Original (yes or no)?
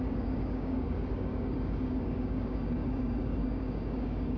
no